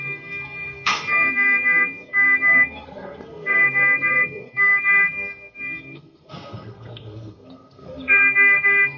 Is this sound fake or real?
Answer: fake